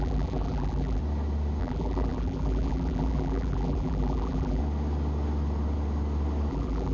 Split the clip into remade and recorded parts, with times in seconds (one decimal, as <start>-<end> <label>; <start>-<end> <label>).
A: 0.0-1.0 remade; 1.0-1.6 recorded; 1.6-4.6 remade; 4.6-6.5 recorded; 6.5-6.9 remade